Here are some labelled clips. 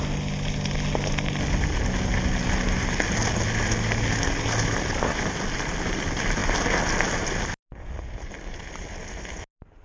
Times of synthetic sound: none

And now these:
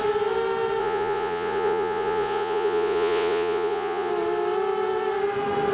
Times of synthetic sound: 0.8-4.1

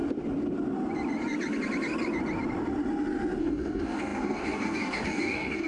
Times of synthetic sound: 3.4-5.7

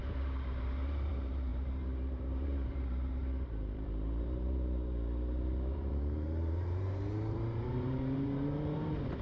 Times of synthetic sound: 0.0-9.2

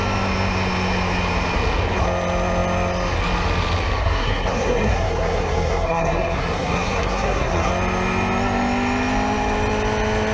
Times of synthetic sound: 4.0-7.7

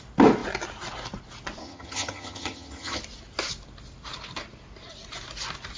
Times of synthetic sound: 1.6-3.0

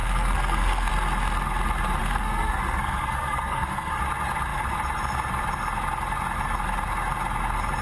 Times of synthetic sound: 0.0-0.9; 2.0-4.0